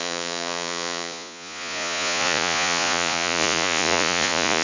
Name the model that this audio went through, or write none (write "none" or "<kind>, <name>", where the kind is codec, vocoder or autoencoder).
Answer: vocoder, Vocos